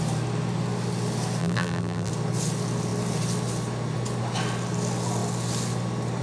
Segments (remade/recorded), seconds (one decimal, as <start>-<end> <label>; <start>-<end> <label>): 0.0-1.4 recorded; 1.4-2.1 remade; 2.1-6.2 recorded